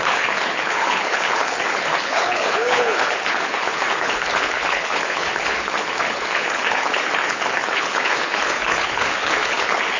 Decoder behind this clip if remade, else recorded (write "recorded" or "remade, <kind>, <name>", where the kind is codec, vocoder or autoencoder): remade, codec, HILCodec